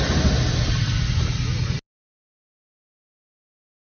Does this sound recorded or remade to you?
recorded